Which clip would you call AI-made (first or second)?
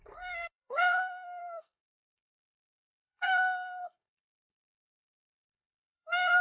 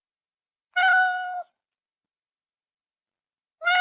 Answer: first